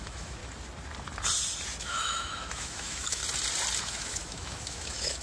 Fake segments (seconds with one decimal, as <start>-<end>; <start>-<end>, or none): 0.0-0.4; 1.8-3.2; 3.8-5.2